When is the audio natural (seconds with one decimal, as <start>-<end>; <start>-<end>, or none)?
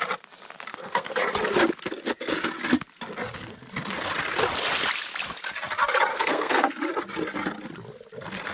0.0-0.7; 1.2-6.1; 6.7-8.5